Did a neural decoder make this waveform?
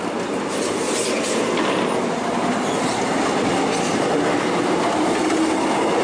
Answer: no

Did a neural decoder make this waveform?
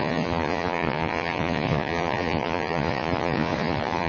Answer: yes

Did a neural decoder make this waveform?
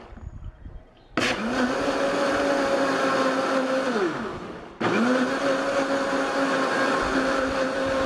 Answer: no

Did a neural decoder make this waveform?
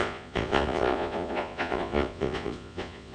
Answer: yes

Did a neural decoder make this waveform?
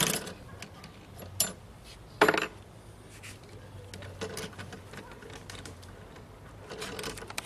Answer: no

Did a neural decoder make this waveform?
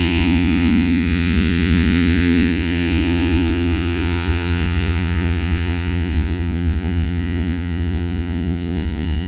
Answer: yes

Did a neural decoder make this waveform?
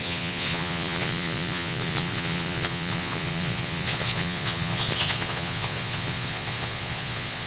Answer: yes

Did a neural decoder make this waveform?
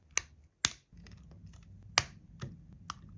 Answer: no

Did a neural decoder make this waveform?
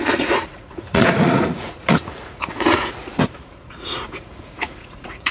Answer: yes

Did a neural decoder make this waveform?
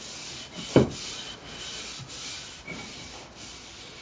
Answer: no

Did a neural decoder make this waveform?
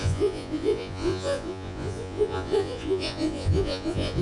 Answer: yes